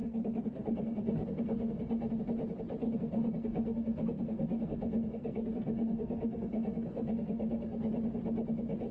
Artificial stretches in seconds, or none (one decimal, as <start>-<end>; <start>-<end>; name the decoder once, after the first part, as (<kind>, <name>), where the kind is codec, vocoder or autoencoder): 0.0-2.2 (codec, SNAC); 2.8-7.9